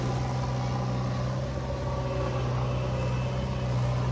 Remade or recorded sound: recorded